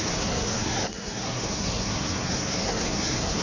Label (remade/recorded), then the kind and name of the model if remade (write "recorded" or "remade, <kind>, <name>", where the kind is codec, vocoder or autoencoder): remade, codec, SNAC